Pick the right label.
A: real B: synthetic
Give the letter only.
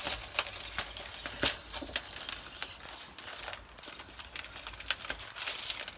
A